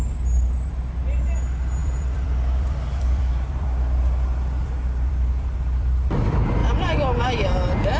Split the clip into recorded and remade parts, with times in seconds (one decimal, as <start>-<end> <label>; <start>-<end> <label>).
0.0-1.8 recorded; 1.8-6.1 remade; 6.1-8.0 recorded